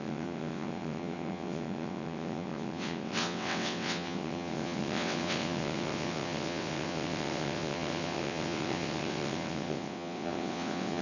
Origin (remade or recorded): remade